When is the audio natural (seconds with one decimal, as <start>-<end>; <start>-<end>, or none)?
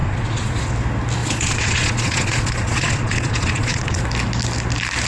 0.7-1.2; 4.0-5.1